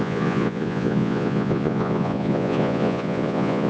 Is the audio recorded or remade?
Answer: remade